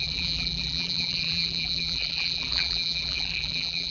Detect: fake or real fake